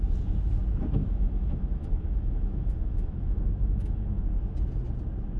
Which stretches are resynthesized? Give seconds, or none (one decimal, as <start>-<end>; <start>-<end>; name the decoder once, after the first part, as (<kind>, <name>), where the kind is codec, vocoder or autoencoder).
1.0-4.2 (autoencoder, DAC-VAE)